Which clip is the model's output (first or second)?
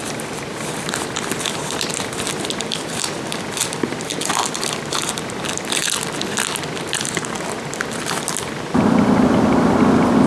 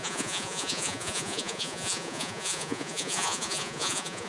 second